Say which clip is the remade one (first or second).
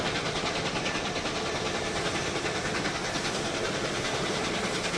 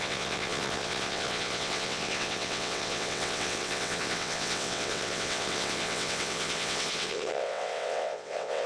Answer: second